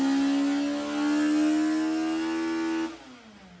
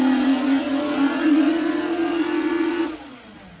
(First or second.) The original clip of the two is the first